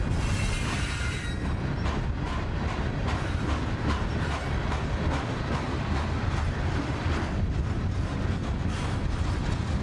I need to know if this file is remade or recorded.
recorded